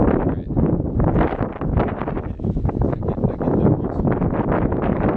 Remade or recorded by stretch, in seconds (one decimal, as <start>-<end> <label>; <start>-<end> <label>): 0.0-5.2 recorded